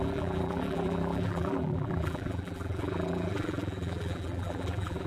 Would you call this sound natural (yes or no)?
no